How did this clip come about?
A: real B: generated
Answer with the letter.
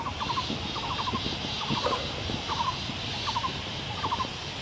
A